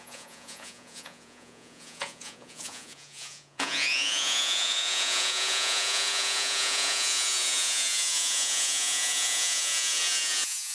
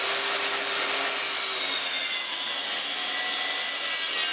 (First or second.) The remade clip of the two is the first